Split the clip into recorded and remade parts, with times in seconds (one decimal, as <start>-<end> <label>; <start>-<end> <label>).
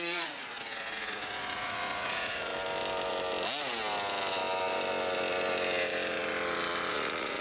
0.0-2.5 remade; 2.5-6.9 recorded; 6.9-7.4 remade